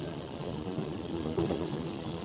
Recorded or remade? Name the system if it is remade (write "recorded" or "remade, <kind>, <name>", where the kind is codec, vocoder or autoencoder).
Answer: remade, vocoder, Vocos